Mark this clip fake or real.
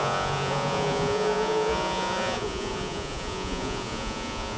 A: fake